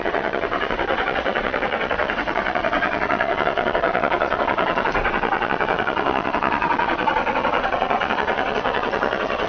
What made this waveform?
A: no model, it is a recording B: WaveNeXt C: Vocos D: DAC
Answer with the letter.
B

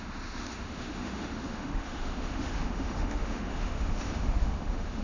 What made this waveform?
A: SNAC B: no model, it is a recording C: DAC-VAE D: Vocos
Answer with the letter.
C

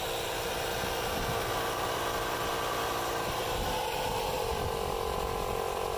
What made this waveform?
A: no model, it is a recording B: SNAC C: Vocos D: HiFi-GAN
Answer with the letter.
A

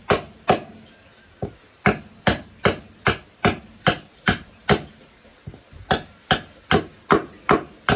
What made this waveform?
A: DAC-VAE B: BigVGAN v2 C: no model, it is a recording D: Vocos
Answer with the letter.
C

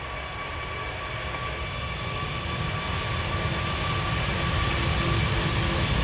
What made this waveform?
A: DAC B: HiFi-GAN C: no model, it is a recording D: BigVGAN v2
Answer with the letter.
C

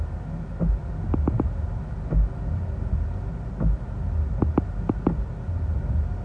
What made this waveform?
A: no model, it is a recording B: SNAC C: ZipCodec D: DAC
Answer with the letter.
A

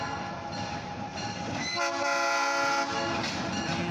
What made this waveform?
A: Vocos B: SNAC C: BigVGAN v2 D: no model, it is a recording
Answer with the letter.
D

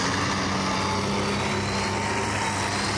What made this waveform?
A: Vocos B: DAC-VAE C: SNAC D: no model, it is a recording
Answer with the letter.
D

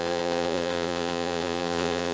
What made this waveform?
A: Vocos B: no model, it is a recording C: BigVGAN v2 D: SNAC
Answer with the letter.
A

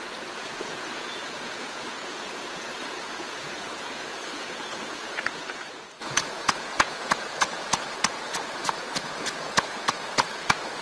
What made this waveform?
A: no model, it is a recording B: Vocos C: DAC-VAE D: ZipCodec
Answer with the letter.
B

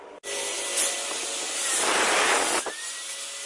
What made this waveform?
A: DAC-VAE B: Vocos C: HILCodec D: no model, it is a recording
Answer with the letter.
D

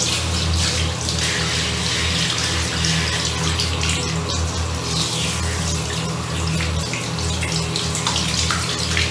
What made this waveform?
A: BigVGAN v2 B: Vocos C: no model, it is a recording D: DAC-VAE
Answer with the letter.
C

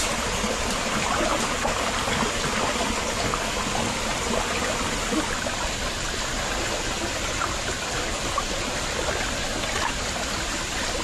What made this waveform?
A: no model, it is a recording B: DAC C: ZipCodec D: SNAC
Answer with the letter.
A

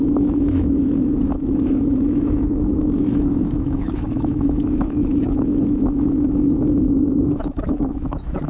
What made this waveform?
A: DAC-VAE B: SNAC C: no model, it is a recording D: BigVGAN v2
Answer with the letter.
A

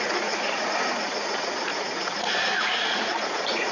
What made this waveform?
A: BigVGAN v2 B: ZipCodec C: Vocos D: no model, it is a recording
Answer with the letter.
C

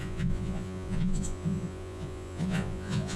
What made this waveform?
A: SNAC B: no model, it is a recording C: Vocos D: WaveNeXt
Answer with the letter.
C